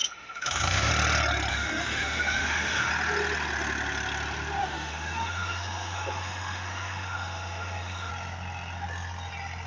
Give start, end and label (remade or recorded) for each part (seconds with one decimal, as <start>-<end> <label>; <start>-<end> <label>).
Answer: 0.0-0.9 remade; 0.9-1.5 recorded; 1.5-2.9 remade; 2.9-4.6 recorded; 4.6-8.1 remade; 8.1-9.7 recorded